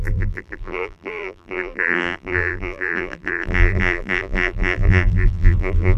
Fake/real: fake